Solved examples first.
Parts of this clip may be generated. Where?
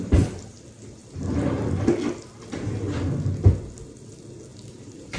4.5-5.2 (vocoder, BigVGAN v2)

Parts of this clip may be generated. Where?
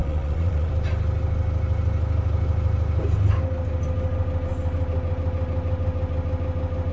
0.0-0.7 (vocoder, Vocos)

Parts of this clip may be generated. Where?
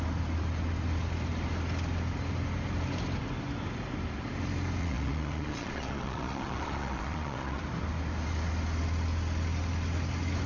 4.8-7.6 (vocoder, Vocos)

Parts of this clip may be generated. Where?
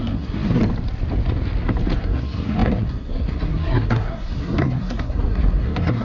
0.0-0.6 (codec, SNAC); 2.0-6.0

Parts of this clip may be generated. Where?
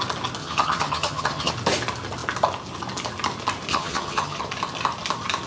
0.4-1.5 (vocoder, HiFi-GAN); 3.7-4.4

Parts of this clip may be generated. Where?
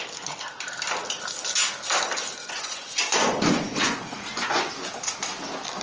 2.4-4.7 (vocoder, Vocos)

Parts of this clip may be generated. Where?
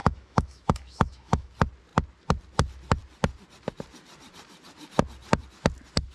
0.0-1.5 (autoencoder, DAC-VAE)